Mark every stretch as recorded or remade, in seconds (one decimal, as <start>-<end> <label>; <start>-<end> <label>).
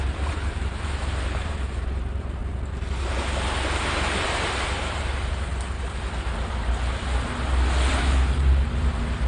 0.0-2.4 remade; 2.4-3.8 recorded; 3.8-5.5 remade; 5.5-7.9 recorded; 7.9-9.3 remade